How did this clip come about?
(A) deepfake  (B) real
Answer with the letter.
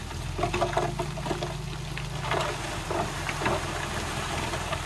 B